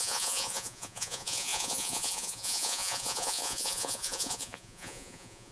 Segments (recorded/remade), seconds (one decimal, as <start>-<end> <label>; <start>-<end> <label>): 0.0-5.5 remade